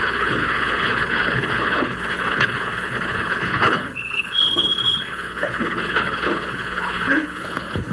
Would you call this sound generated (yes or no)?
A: yes